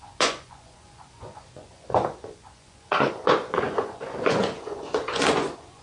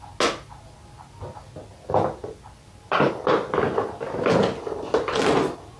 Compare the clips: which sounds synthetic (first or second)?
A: first